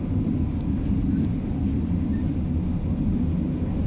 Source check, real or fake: real